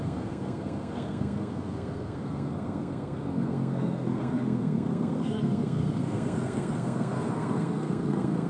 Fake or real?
fake